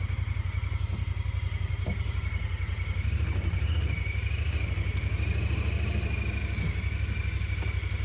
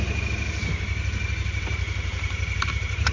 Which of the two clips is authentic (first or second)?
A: first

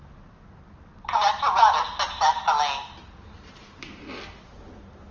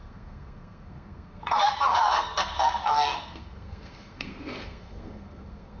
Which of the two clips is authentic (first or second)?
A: first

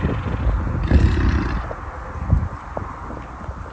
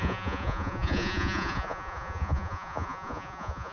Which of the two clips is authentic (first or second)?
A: first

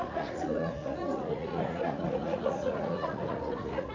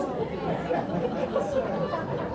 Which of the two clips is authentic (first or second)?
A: second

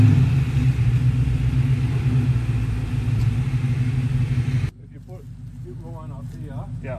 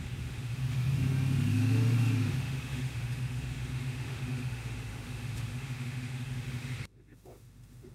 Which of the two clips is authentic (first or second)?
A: first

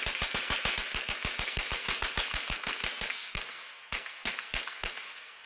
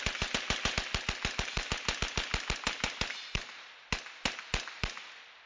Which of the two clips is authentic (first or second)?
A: second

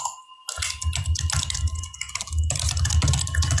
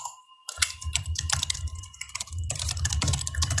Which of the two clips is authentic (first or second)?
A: first